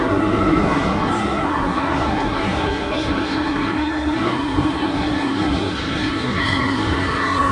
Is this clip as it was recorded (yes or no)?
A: no